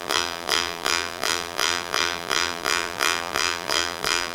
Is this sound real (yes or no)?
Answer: no